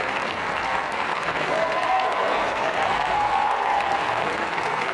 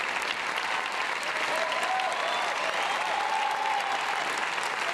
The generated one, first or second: first